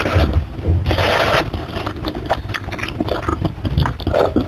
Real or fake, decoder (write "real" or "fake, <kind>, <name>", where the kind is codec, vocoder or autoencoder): real